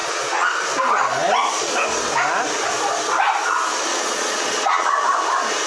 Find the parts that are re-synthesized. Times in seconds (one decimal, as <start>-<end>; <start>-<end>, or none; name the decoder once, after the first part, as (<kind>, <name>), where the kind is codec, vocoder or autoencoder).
0.0-0.5 (vocoder, Vocos); 3.9-4.9